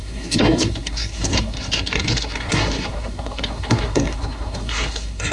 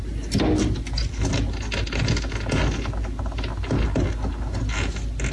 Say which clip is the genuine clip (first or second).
second